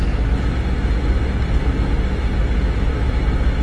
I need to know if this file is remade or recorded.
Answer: recorded